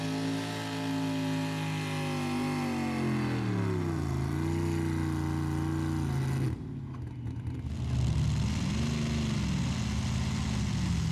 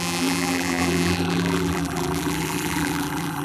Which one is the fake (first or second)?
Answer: second